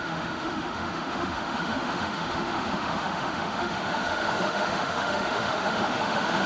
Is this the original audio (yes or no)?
no